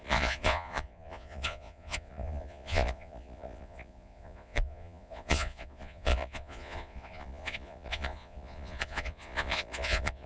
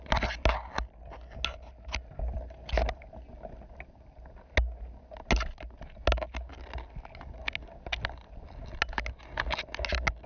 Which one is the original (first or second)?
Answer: second